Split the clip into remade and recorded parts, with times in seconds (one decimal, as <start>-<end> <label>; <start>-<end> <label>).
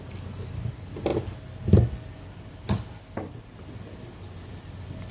0.0-5.1 recorded